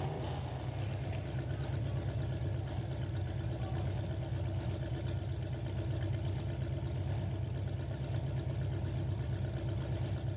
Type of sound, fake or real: real